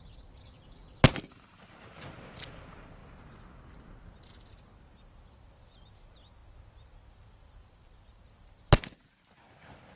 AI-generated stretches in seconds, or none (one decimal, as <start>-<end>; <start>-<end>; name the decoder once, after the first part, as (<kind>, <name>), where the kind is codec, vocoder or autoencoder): none